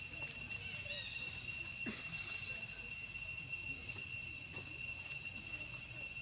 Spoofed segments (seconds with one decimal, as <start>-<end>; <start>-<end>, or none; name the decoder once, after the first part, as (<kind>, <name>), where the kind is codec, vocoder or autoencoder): 1.1-2.0 (vocoder, Vocos); 3.8-6.2

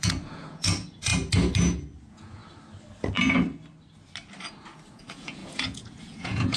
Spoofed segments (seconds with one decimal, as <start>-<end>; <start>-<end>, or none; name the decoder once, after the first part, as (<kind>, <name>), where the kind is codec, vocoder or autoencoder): 0.0-1.1 (vocoder, Vocos); 2.0-2.4; 4.9-6.6

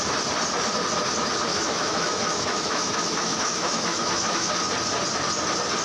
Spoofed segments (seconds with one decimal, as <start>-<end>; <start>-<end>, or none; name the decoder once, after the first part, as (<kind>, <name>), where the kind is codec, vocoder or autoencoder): 1.5-4.5 (autoencoder, DAC-VAE)

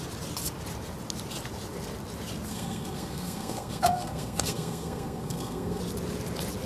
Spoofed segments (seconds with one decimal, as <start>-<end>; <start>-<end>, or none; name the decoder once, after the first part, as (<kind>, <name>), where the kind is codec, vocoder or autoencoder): 2.5-5.8 (codec, SNAC)

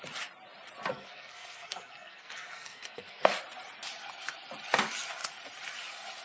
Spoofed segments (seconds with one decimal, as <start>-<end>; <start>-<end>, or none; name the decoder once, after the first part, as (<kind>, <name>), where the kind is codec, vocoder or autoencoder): 0.9-3.3 (codec, SNAC)

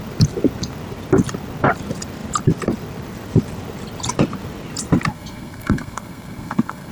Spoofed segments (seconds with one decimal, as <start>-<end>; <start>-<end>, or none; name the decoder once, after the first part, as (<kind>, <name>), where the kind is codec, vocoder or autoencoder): 5.1-6.9 (codec, SNAC)